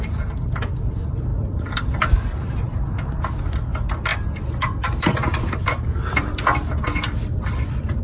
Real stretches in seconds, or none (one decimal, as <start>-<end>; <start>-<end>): 0.0-8.0